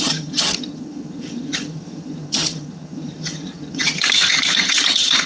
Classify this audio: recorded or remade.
remade